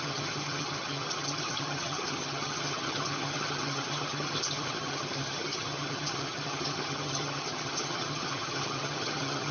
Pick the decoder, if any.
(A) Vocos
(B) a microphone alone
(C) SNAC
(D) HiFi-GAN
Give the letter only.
D